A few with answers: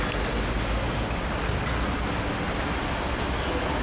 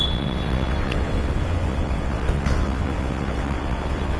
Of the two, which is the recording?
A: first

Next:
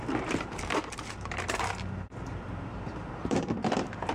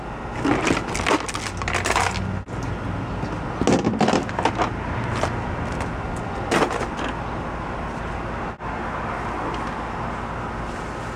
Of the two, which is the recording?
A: second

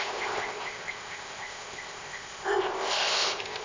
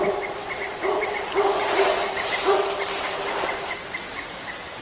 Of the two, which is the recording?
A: second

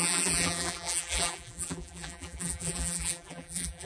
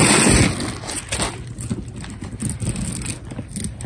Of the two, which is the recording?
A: second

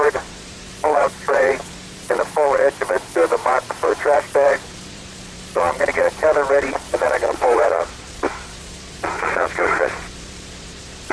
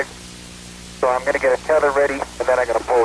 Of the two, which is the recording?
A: second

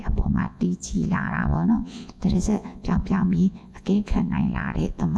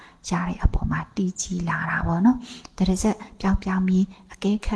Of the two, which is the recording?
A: second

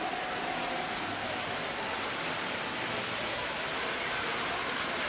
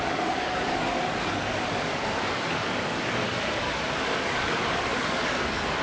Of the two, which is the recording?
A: first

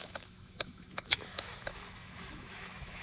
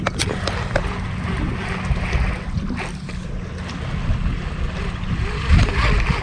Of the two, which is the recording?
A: second